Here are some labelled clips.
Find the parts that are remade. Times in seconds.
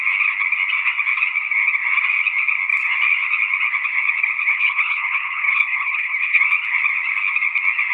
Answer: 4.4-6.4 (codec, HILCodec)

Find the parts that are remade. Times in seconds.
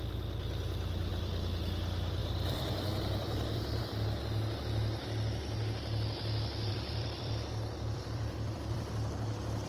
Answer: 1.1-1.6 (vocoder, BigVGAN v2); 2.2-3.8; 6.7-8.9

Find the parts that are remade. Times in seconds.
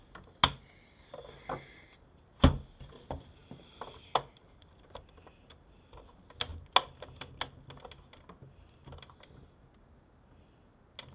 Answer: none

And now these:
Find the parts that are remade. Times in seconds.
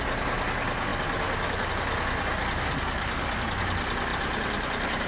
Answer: 2.4-3.6 (vocoder, BigVGAN v2); 4.1-5.1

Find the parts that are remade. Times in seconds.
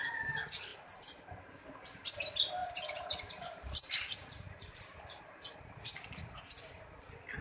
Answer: 0.7-1.4 (vocoder, BigVGAN v2); 2.6-5.6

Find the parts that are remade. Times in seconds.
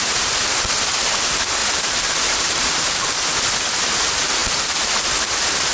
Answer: 1.6-3.1 (vocoder, BigVGAN v2)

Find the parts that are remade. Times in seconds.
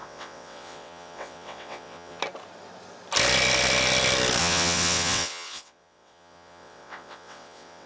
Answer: 0.0-2.2 (vocoder, WaveNeXt); 4.4-7.9